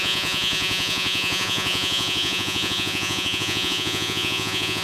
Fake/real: fake